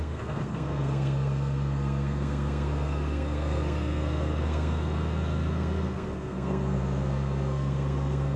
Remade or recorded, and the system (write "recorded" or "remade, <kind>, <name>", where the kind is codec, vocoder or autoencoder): remade, codec, SNAC